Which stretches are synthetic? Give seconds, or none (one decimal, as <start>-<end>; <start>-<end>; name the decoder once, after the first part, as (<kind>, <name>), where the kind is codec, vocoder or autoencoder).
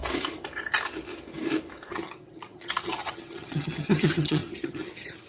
1.9-5.3 (vocoder, HiFi-GAN)